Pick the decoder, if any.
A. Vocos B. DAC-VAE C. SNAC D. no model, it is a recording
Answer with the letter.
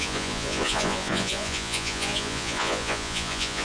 A